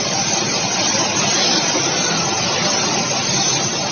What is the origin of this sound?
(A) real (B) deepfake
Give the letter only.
A